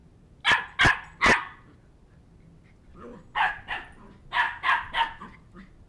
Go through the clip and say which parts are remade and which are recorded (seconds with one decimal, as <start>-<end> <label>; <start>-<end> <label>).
0.0-5.9 recorded

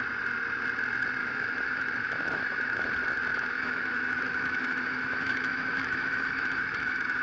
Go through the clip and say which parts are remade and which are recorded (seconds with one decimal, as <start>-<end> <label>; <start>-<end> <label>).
0.0-1.2 recorded; 1.2-2.9 remade; 2.9-3.3 recorded; 3.3-7.2 remade

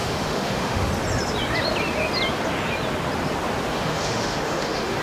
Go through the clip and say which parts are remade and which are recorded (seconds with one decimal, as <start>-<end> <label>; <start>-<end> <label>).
0.0-0.9 remade; 0.9-3.7 recorded; 3.7-5.0 remade

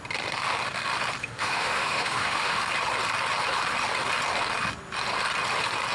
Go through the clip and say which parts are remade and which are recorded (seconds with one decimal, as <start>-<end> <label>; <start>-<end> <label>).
0.0-1.2 recorded; 1.2-2.6 remade; 2.6-5.9 recorded

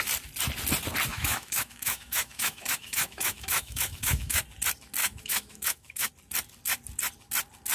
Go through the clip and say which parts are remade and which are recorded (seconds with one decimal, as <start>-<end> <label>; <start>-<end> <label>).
0.0-1.1 recorded; 1.1-4.4 remade; 4.4-5.0 recorded; 5.0-6.1 remade; 6.1-7.7 recorded